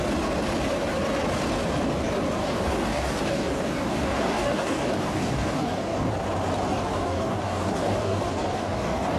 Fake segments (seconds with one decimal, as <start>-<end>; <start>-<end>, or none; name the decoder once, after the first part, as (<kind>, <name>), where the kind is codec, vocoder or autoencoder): 2.4-6.1 (codec, DAC); 6.7-9.2